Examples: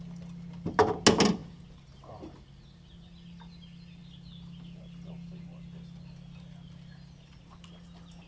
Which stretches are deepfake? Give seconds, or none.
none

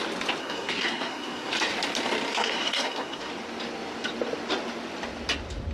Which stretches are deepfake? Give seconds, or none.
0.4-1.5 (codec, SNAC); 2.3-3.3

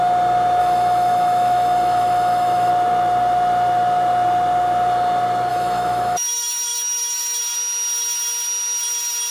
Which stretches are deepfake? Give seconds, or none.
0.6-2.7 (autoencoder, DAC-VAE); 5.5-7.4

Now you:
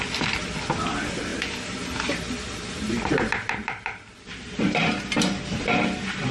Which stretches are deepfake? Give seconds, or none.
none